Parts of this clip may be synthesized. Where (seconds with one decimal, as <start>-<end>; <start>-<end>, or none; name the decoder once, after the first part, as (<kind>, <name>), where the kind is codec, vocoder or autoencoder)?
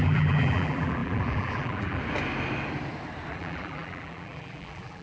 0.0-2.0 (vocoder, BigVGAN v2); 3.3-5.0